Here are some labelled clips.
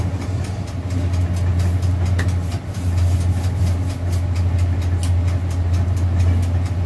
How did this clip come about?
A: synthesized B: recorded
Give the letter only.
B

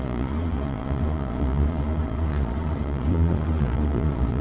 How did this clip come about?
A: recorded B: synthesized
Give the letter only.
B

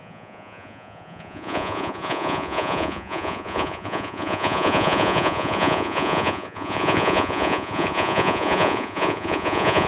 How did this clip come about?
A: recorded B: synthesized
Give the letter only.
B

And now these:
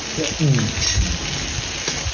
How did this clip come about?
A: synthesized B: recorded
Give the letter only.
B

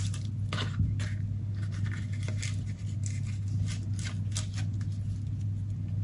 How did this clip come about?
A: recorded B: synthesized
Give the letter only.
A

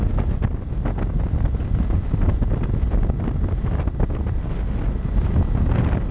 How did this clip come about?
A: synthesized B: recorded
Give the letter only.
B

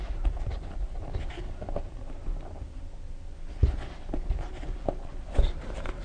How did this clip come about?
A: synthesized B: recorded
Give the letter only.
B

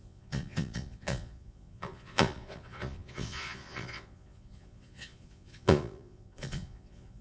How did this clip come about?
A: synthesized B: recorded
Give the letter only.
A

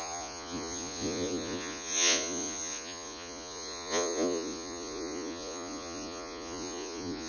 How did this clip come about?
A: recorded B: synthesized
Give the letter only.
B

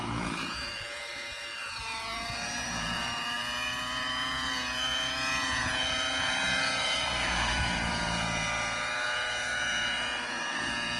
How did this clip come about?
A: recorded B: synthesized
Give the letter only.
B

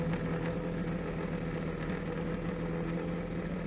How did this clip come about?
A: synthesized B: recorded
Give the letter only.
B